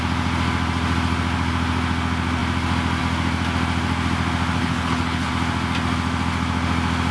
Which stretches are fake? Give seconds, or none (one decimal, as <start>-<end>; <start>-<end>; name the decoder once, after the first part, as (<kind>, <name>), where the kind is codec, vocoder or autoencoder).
4.6-5.3 (codec, HILCodec)